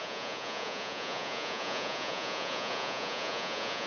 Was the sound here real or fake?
fake